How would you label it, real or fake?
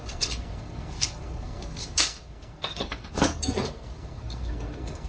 fake